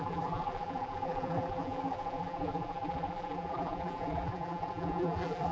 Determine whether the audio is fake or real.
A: fake